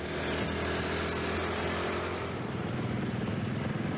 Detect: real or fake real